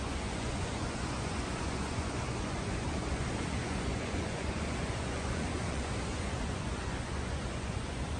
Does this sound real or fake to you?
fake